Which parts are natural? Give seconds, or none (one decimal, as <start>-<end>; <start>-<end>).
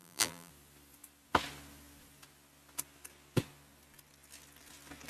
0.5-5.1